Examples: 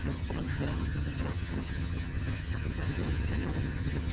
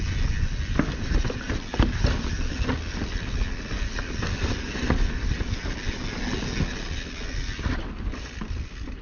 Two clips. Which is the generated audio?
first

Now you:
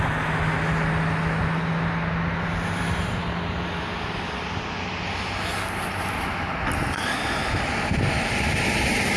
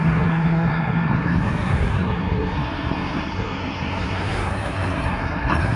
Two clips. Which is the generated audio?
second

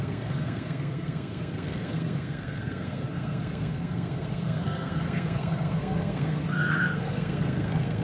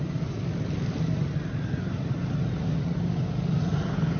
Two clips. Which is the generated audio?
first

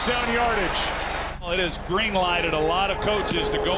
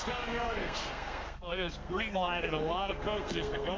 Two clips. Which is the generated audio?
second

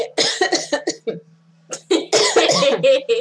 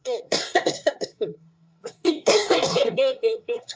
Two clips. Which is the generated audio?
second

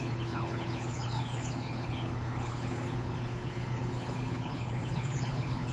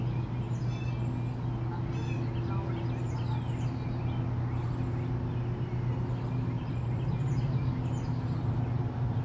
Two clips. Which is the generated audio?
first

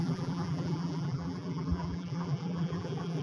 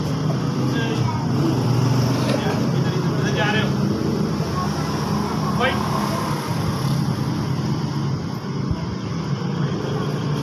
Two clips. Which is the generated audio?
first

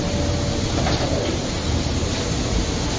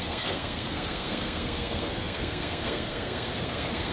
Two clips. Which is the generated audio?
second